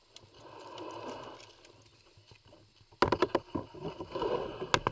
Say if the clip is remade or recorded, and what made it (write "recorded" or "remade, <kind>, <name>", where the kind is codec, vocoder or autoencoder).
recorded